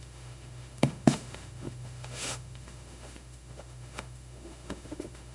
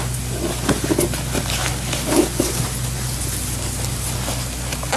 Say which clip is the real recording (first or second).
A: second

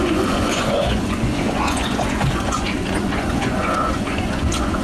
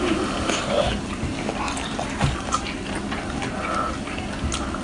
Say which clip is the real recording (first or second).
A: second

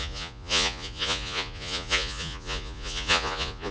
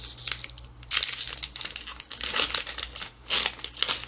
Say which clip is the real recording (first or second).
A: second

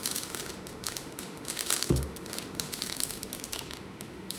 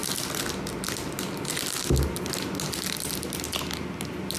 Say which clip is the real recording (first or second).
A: second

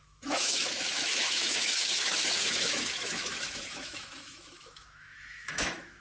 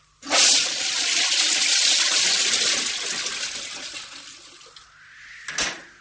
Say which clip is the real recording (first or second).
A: second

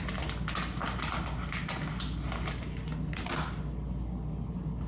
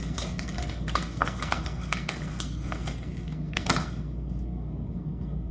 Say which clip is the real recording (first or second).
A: first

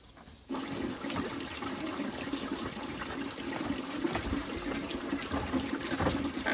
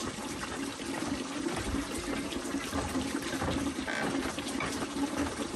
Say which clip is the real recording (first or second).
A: second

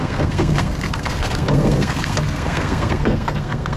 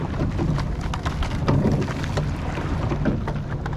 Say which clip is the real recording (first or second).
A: second